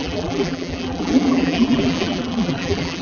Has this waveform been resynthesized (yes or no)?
yes